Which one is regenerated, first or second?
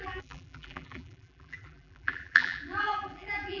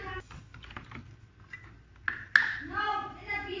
first